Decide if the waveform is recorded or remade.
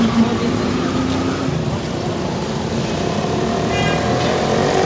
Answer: recorded